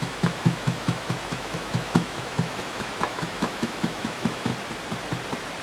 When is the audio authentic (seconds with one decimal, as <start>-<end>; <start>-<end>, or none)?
4.5-5.6